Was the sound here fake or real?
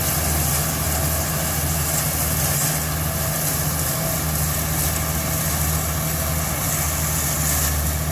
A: real